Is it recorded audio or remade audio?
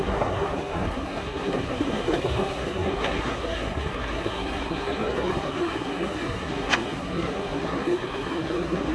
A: remade